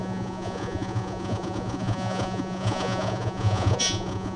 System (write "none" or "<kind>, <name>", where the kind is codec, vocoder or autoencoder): vocoder, Vocos